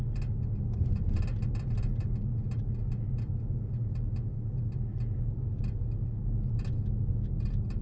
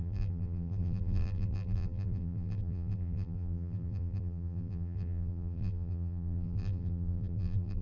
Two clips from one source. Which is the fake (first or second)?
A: second